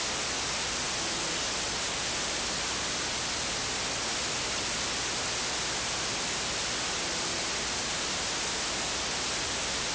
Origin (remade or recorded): recorded